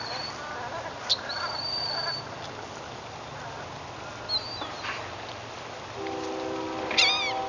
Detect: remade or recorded recorded